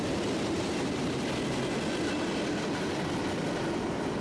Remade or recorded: recorded